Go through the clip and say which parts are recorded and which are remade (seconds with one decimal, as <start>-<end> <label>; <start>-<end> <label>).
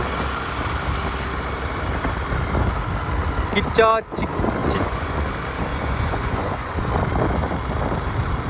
0.0-4.6 recorded; 4.6-5.3 remade; 5.3-5.7 recorded; 5.7-6.9 remade; 6.9-8.5 recorded